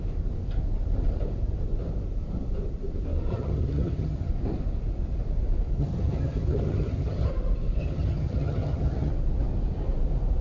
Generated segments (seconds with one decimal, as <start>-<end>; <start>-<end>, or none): 3.3-4.3; 5.8-7.3; 7.8-9.1